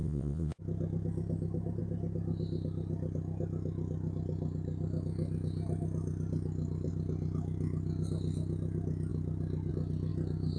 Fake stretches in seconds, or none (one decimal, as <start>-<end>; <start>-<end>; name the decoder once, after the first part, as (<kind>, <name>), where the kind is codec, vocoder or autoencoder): 0.0-0.6 (vocoder, Vocos)